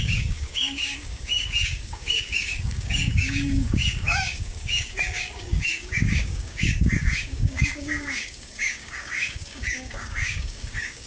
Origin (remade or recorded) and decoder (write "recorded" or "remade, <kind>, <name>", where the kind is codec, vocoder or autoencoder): remade, codec, DAC